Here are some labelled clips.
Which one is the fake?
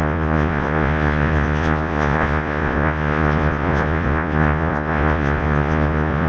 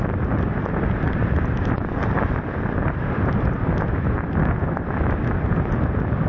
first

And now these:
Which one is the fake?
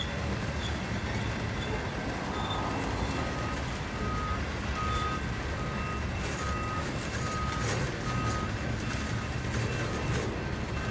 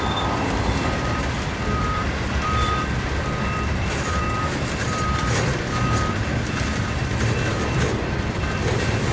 second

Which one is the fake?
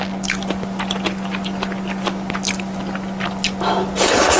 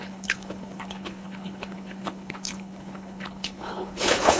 second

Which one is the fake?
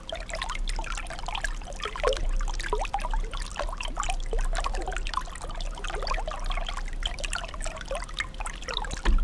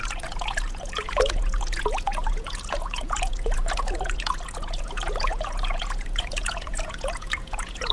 second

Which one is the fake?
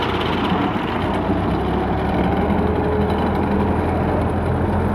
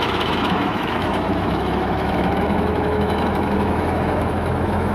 second